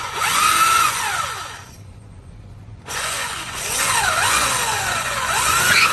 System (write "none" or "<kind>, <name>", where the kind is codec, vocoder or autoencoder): vocoder, Vocos